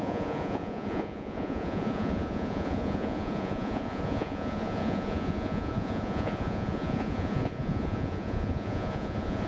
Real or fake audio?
fake